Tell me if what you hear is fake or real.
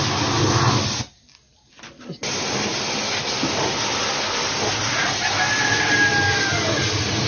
real